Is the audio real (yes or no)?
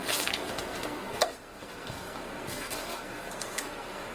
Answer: no